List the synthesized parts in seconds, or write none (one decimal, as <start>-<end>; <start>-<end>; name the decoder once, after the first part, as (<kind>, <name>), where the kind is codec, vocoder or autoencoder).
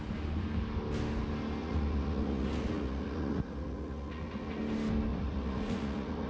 1.6-4.6 (vocoder, Vocos); 5.1-6.3